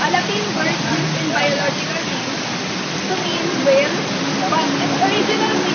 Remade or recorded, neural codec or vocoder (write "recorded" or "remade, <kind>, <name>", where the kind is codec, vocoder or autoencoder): remade, vocoder, BigVGAN v2